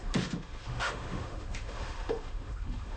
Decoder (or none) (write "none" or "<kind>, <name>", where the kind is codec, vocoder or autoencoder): autoencoder, DAC-VAE